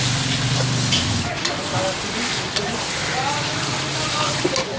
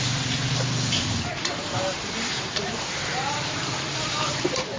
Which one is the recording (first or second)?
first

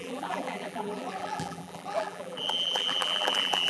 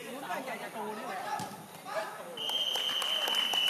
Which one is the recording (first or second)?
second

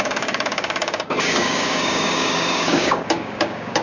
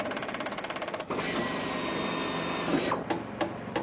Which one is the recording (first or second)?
second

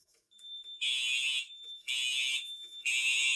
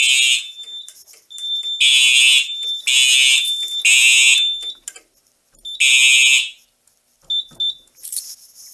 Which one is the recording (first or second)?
second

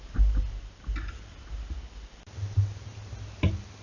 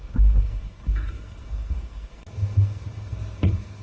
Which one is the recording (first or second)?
first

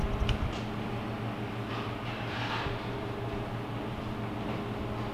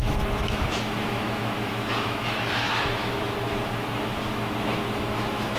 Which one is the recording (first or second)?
first